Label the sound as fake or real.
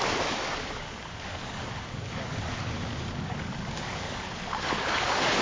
fake